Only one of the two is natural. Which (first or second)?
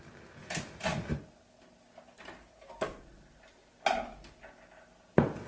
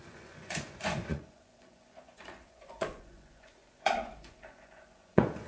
first